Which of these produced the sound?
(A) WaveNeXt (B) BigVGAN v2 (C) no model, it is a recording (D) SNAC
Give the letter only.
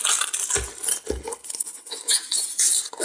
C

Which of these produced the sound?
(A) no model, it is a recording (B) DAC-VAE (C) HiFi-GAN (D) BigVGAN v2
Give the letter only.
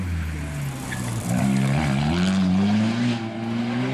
A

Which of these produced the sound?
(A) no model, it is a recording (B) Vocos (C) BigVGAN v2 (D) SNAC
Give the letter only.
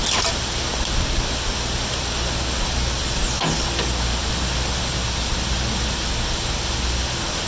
A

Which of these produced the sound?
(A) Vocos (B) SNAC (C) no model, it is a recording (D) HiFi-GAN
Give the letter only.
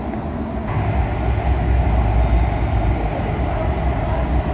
C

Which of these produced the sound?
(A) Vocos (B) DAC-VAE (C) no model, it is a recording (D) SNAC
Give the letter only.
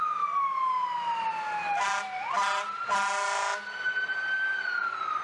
C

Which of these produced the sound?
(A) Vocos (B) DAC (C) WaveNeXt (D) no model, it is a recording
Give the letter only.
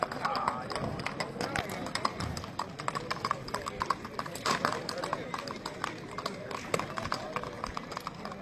D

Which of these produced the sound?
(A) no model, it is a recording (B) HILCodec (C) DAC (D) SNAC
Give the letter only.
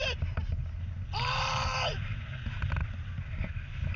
A